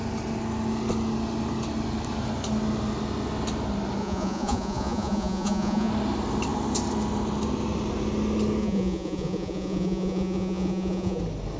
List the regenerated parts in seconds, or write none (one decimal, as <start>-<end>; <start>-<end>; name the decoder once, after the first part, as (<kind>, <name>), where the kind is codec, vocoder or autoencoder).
4.0-5.9 (vocoder, Vocos); 8.6-11.2